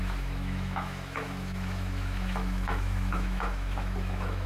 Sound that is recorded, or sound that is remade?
remade